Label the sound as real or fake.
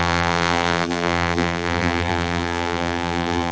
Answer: fake